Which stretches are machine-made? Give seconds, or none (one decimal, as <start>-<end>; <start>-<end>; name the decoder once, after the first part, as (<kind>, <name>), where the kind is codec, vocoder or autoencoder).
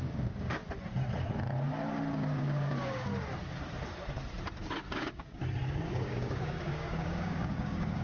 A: 0.0-0.6 (codec, DAC); 2.0-3.1; 4.8-5.4; 5.9-8.0